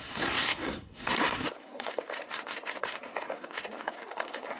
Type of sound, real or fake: fake